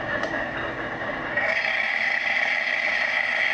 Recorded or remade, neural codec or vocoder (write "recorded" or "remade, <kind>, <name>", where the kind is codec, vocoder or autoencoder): remade, codec, DAC